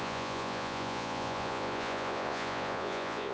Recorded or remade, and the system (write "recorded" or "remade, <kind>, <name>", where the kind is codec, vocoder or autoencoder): remade, vocoder, Vocos